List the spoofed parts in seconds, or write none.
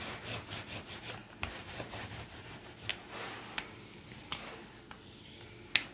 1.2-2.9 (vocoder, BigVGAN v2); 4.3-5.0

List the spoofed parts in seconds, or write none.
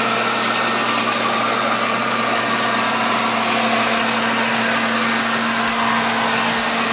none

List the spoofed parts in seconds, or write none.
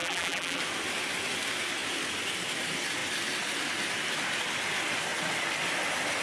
0.0-0.6 (vocoder, BigVGAN v2)